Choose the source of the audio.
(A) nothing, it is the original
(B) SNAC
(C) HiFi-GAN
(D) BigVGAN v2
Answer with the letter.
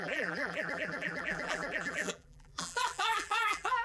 D